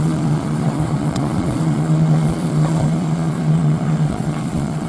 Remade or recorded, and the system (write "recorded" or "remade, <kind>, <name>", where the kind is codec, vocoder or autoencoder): remade, vocoder, Vocos